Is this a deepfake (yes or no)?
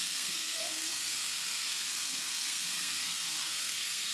yes